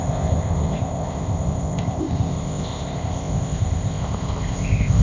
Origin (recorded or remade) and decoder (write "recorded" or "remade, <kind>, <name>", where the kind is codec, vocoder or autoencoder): remade, codec, ZipCodec